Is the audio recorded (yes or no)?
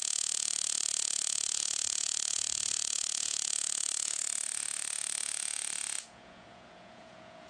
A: no